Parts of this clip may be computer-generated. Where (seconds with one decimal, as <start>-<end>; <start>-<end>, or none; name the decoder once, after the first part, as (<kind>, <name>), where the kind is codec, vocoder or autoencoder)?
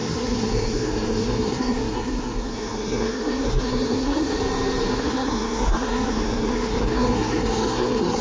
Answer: 0.0-4.4 (codec, SNAC); 4.9-8.2